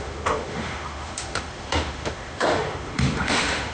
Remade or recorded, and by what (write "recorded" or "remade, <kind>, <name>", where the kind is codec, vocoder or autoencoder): remade, autoencoder, DAC-VAE